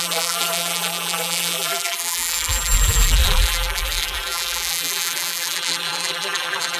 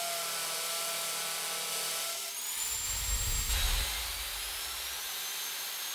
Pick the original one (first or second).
second